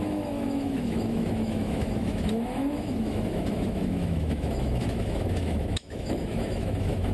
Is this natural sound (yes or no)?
no